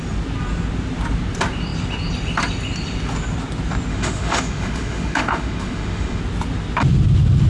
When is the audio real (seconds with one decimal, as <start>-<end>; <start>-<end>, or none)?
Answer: 0.0-3.9; 6.2-7.5